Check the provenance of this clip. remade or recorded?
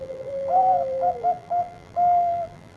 remade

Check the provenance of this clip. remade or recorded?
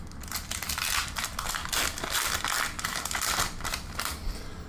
recorded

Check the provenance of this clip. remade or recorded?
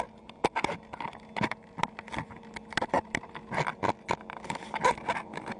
recorded